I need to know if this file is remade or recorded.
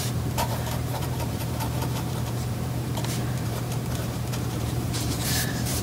remade